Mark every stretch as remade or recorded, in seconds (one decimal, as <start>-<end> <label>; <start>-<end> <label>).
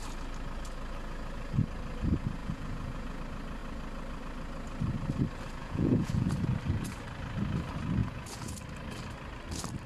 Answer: 0.0-2.4 recorded; 2.4-3.2 remade; 3.2-5.6 recorded; 5.6-6.3 remade; 6.3-8.0 recorded; 8.0-8.6 remade; 8.6-9.9 recorded